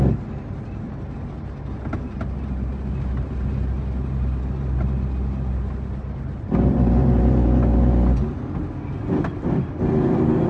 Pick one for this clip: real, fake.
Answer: real